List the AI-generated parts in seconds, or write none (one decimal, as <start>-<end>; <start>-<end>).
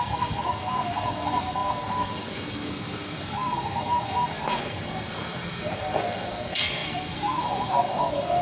0.0-8.4